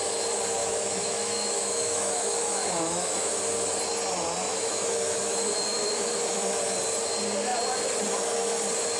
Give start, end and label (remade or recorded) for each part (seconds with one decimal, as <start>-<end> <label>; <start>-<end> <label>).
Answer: 0.0-0.6 recorded; 0.6-3.4 remade; 3.4-4.5 recorded; 4.5-6.6 remade; 6.6-9.0 recorded